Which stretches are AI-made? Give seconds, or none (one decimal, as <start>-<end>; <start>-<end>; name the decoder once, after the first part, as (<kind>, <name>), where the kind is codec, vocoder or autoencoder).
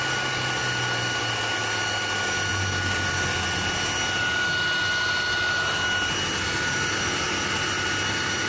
none